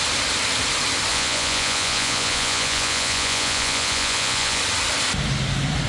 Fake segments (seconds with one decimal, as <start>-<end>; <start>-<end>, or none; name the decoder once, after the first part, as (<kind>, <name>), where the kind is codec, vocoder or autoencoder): 1.1-4.6 (vocoder, Vocos)